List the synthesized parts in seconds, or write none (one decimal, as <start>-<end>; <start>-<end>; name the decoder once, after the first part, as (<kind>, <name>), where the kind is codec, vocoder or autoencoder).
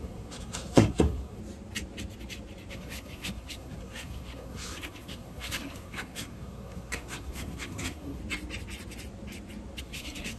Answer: 0.0-1.4 (codec, SNAC); 2.7-8.2; 9.8-10.4